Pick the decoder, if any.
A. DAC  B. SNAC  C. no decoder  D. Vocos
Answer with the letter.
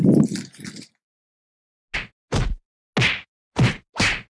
C